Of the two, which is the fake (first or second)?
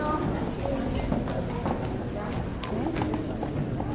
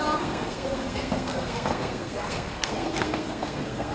second